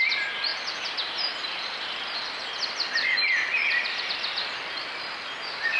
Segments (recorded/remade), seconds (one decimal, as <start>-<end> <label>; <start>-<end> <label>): 0.0-5.8 recorded